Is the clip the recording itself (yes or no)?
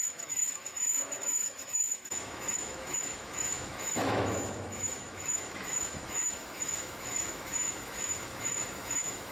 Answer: no